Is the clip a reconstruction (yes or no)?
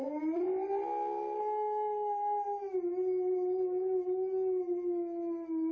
no